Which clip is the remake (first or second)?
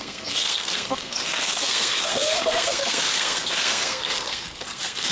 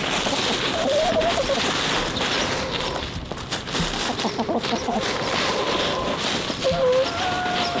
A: first